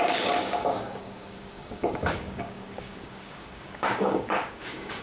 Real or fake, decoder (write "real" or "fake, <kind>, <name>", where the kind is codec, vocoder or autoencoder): fake, codec, DAC